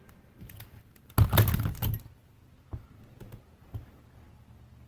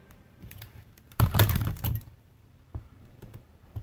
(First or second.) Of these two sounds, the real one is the first